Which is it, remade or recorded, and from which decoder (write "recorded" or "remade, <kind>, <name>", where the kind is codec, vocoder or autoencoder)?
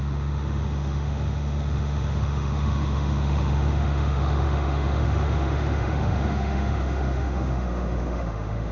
remade, autoencoder, DAC-VAE